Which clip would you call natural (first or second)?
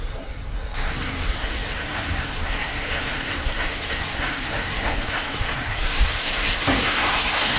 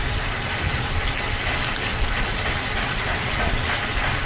second